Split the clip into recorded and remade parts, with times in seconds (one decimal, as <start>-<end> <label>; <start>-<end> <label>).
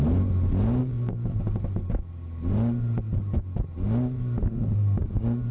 0.0-0.8 recorded; 0.8-1.4 remade; 1.4-5.5 recorded